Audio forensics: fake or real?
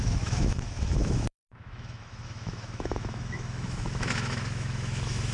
fake